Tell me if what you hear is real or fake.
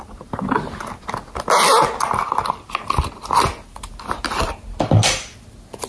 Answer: real